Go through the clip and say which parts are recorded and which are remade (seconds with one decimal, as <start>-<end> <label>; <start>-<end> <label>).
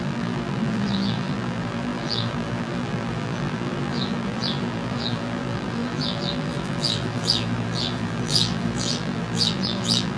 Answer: 0.0-10.2 remade